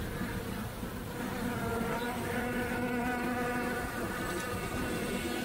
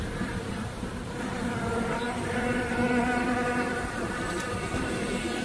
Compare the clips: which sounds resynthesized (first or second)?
second